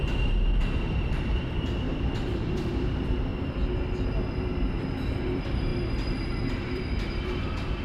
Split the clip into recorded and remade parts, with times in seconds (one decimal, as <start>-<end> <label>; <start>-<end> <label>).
0.0-3.3 remade; 3.3-4.3 recorded; 4.3-7.8 remade